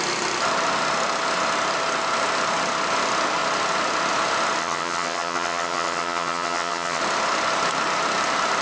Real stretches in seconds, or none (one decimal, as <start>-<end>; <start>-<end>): 0.0-4.6; 7.0-8.6